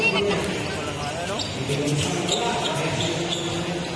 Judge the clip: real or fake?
real